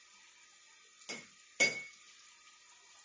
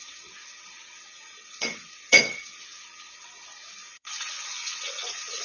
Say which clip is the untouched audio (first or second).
first